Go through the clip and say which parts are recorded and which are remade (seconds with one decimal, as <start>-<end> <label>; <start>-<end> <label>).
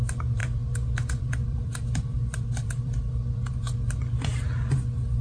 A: 0.0-0.4 recorded; 0.4-3.5 remade; 3.5-5.2 recorded